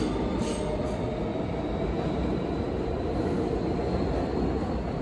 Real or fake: real